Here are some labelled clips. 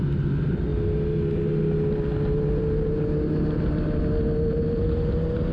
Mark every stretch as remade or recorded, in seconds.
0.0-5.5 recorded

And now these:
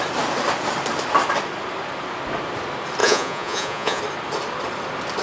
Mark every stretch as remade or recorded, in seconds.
0.0-3.0 recorded; 3.0-4.0 remade; 4.0-5.2 recorded